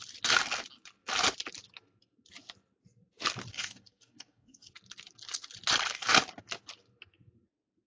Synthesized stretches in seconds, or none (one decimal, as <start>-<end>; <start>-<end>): 3.5-4.7